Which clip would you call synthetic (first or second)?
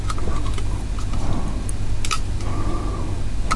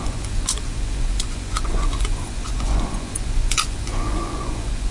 second